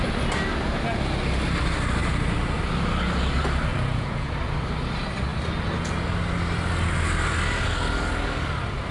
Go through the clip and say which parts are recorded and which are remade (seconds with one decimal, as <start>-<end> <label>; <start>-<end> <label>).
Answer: 0.0-3.7 recorded; 3.7-4.3 remade; 4.3-8.9 recorded